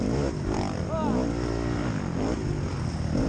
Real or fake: real